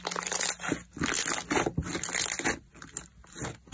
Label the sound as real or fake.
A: real